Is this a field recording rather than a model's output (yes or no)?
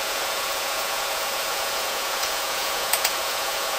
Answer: no